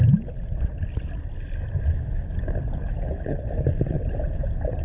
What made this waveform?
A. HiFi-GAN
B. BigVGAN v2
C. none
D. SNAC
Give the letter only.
C